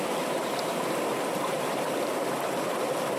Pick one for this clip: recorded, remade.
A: recorded